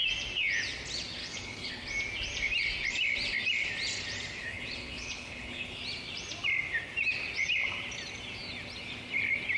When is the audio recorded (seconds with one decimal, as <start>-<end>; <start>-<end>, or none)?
0.0-1.2; 1.7-4.4; 5.8-9.6